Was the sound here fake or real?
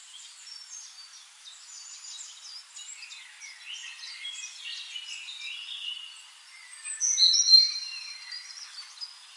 real